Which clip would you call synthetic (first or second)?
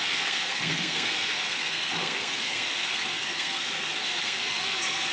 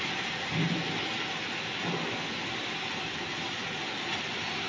first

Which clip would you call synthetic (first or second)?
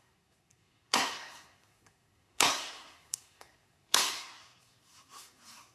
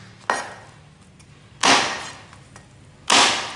first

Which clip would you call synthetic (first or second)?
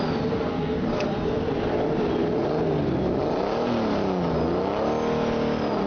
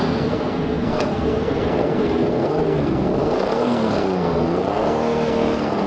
second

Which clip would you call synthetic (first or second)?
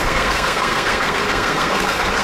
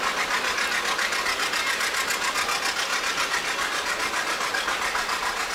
first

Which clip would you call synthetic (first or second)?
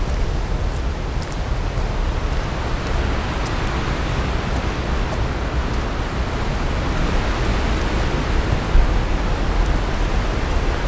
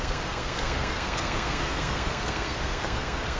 second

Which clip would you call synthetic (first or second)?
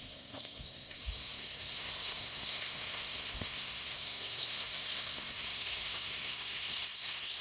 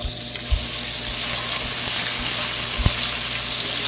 first